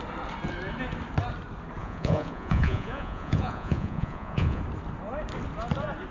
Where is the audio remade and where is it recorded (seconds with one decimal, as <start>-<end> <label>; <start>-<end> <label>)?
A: 0.0-1.8 recorded; 1.8-4.6 remade; 4.6-6.1 recorded